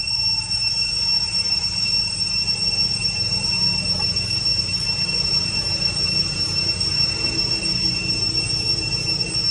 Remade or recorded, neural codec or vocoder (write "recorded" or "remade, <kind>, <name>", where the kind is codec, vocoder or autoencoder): recorded